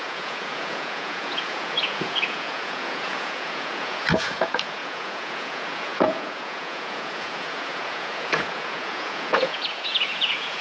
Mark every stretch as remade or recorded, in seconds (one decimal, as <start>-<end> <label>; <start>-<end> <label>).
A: 0.0-10.6 remade

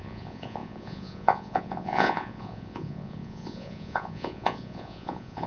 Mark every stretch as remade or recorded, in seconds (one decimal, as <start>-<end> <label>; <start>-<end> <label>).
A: 0.0-5.5 remade

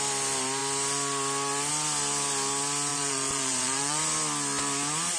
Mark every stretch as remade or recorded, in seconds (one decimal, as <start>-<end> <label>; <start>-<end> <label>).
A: 0.0-2.9 recorded; 2.9-4.0 remade; 4.0-5.2 recorded